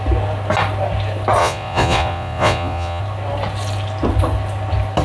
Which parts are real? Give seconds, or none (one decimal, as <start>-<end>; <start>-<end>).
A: 0.0-1.4; 3.0-5.0